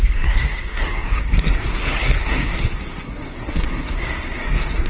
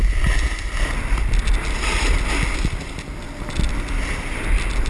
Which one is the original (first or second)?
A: second